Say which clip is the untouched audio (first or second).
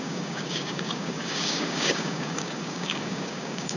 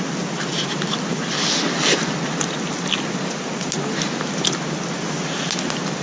second